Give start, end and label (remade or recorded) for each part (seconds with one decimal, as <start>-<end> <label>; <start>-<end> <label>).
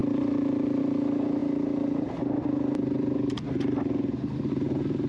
0.0-5.1 recorded